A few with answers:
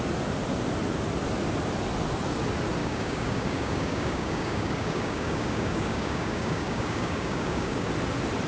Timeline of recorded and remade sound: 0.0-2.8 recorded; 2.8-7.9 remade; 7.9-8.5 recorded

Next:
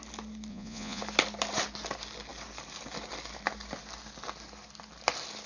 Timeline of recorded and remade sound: 0.0-0.5 recorded; 0.5-1.0 remade; 1.0-5.5 recorded

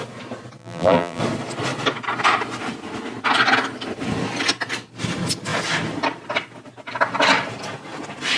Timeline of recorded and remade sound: 0.0-0.6 recorded; 0.6-1.2 remade; 1.2-8.4 recorded

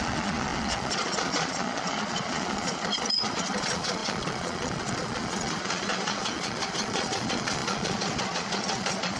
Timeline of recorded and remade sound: 0.0-9.2 remade

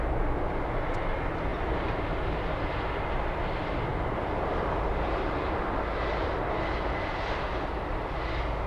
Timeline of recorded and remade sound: 0.0-3.9 recorded; 3.9-5.6 remade; 5.6-8.7 recorded